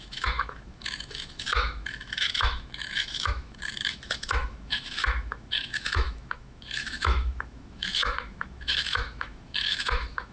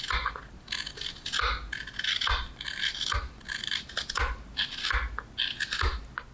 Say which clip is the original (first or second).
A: second